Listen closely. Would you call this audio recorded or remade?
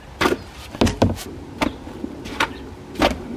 recorded